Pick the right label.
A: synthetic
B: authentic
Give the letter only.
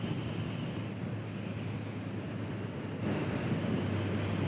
B